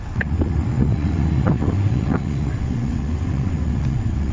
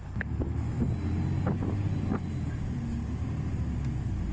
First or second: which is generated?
first